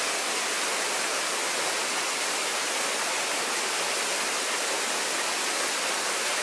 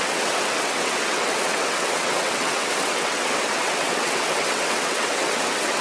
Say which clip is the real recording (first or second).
first